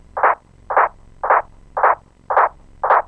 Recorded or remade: recorded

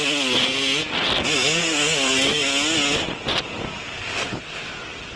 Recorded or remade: recorded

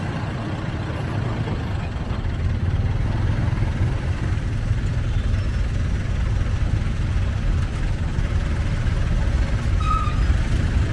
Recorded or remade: recorded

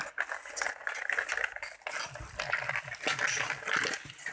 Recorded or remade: recorded